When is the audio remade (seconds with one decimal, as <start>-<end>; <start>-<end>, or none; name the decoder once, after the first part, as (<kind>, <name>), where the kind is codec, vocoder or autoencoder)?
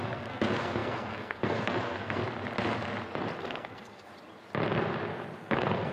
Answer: 0.0-2.2 (codec, SNAC); 3.4-4.1; 5.4-5.9